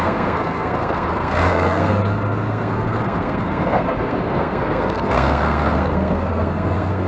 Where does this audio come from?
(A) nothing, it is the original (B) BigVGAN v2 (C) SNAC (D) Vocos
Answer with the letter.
C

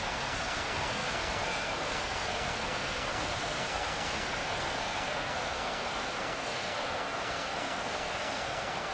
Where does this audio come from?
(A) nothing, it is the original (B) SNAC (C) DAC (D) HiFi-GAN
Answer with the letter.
B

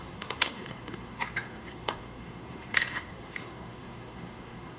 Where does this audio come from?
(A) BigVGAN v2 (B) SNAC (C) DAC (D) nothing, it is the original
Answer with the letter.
B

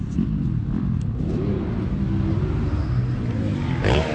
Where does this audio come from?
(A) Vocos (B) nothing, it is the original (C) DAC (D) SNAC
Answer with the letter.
B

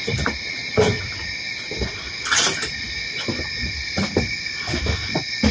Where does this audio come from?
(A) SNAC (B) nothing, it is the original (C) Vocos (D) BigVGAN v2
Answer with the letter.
B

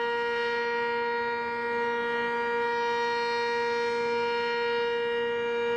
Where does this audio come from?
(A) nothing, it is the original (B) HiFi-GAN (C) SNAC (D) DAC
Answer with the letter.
A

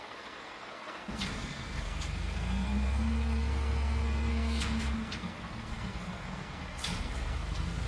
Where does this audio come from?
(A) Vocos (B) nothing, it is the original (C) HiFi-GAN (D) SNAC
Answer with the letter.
D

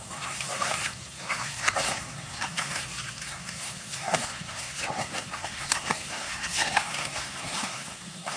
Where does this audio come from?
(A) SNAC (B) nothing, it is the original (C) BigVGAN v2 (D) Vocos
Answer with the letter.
A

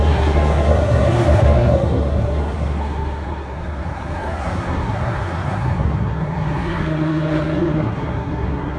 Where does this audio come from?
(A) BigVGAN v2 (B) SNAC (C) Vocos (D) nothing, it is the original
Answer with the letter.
B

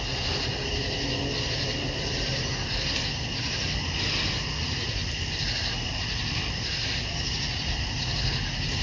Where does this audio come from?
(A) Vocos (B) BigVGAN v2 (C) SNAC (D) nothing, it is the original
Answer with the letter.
D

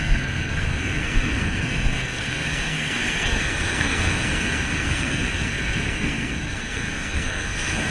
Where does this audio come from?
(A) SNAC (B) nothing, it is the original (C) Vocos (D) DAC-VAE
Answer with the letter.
A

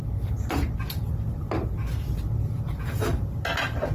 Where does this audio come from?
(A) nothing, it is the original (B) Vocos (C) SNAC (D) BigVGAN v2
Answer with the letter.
A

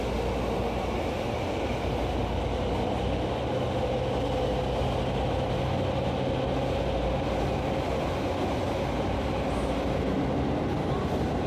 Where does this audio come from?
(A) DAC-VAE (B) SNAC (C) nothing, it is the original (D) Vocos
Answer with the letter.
C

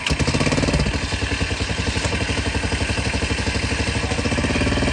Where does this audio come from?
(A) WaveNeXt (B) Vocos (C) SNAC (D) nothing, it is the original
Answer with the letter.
D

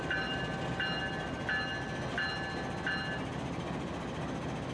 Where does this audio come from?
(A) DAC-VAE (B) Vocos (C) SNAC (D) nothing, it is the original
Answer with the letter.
D